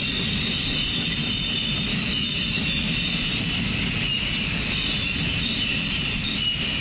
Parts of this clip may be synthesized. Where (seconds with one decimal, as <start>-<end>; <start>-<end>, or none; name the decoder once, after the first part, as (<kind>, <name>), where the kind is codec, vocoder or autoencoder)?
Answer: 1.9-2.9 (autoencoder, DAC-VAE)